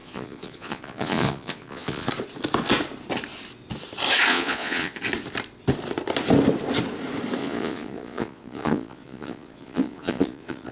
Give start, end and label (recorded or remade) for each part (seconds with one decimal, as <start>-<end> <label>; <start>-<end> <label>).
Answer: 0.0-2.1 remade; 2.1-4.3 recorded; 4.3-5.0 remade; 5.0-7.4 recorded; 7.4-10.7 remade